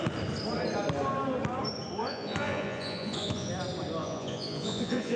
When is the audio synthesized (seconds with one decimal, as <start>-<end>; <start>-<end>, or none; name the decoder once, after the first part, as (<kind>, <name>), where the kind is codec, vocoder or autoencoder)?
2.0-3.5 (vocoder, Vocos); 4.0-5.2